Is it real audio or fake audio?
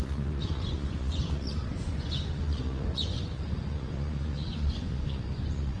fake